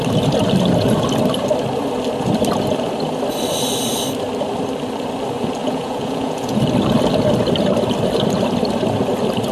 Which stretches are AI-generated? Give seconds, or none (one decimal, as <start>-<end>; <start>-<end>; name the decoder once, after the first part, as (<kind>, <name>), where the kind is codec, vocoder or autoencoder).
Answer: 5.6-6.6 (vocoder, Vocos)